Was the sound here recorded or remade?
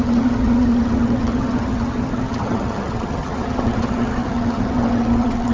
remade